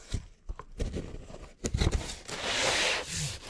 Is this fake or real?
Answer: real